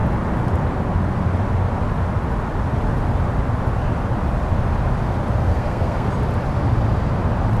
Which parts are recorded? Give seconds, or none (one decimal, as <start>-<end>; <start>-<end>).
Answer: 0.0-5.4; 6.1-7.6